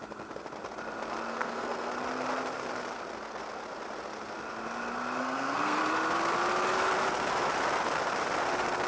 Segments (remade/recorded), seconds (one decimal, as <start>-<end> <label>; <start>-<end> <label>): 0.0-1.3 recorded; 1.3-1.9 remade; 1.9-5.2 recorded; 5.2-5.8 remade; 5.8-8.9 recorded